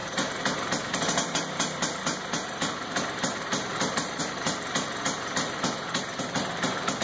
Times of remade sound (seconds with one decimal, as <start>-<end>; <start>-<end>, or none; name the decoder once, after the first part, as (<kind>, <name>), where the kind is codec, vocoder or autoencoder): none